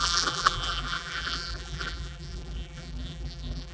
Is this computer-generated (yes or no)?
yes